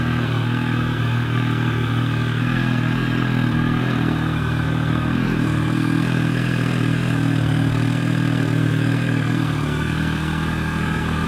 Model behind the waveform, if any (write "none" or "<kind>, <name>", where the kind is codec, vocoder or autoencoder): codec, SNAC